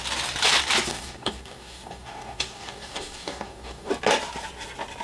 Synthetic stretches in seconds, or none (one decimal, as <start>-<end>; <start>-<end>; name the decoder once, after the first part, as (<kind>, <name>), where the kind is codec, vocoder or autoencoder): 0.9-3.9 (codec, DAC)